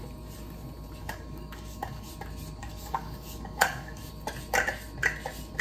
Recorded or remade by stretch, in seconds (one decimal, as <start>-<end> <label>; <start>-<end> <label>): 0.0-1.0 recorded; 1.0-2.1 remade; 2.1-2.6 recorded; 2.6-4.1 remade; 4.1-5.6 recorded